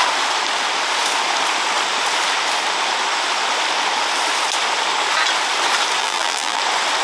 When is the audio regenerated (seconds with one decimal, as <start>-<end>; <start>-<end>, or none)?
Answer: 6.0-6.6